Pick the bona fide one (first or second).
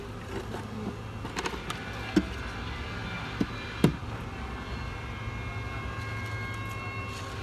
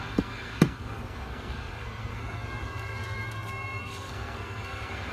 first